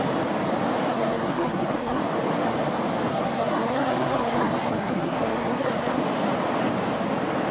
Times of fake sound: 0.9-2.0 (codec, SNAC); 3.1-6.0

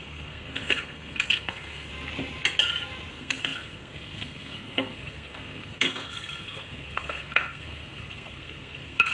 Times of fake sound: 0.0-1.9 (codec, SNAC); 3.1-9.1

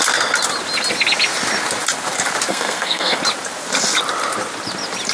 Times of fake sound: 2.5-3.2 (codec, SNAC)

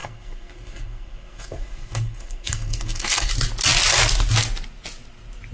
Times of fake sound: 0.0-3.3 (codec, SNAC)

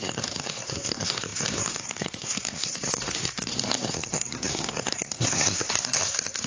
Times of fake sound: 0.0-6.5 (codec, SNAC)

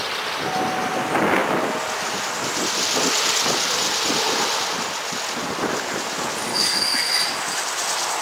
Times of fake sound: 6.5-7.1 (codec, SNAC)

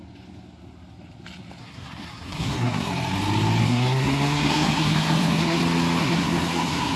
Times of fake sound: 1.6-2.9 (codec, SNAC); 3.6-5.6; 6.0-7.0